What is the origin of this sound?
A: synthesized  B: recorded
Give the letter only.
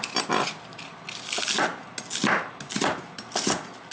B